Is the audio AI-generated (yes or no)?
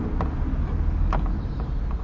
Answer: no